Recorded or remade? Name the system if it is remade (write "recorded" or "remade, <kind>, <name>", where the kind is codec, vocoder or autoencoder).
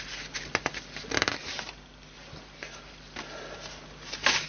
recorded